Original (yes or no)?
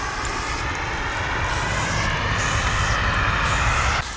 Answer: yes